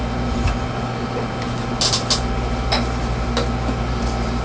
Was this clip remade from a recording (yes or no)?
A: no